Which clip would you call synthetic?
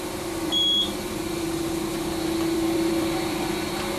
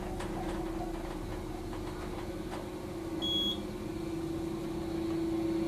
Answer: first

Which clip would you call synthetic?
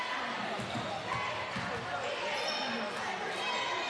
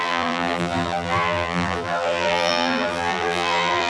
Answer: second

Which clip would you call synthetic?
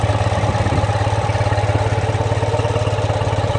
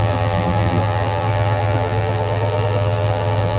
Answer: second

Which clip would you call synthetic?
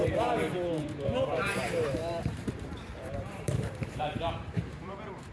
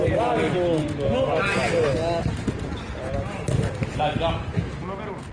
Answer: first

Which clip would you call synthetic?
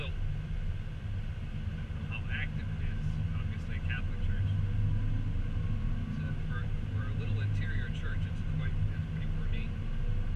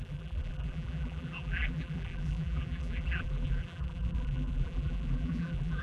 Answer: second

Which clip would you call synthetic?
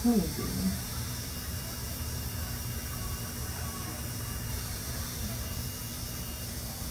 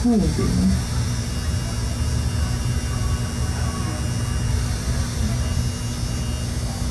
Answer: first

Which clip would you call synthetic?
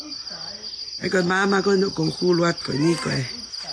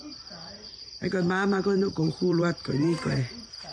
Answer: second